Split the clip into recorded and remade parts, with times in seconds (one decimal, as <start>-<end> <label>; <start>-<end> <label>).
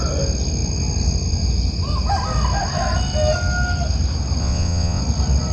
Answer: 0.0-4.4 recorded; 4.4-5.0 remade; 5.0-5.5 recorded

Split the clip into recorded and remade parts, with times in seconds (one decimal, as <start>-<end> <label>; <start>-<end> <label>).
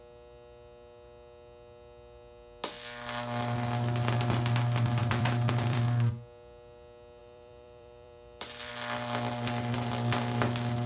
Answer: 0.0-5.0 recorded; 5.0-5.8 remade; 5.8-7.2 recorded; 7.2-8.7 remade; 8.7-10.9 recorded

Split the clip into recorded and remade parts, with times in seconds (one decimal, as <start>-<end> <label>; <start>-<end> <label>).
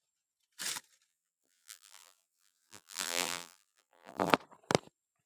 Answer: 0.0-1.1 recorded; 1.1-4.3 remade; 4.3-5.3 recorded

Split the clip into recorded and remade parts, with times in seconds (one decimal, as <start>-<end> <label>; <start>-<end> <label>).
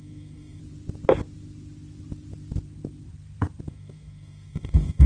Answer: 0.0-0.6 remade; 0.6-3.7 recorded; 3.7-5.1 remade